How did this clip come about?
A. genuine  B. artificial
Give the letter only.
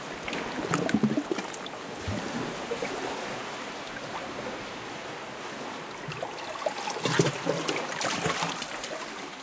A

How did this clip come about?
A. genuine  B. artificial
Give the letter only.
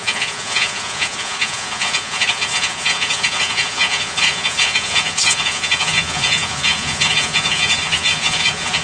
B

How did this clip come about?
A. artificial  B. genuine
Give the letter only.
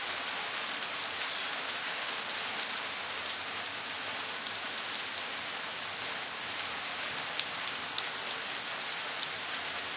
B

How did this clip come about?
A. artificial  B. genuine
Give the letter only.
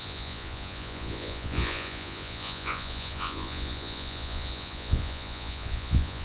A